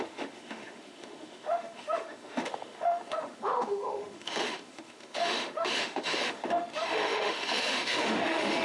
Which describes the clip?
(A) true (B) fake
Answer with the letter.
B